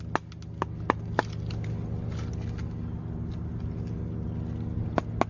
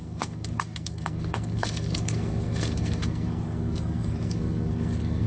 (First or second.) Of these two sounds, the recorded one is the first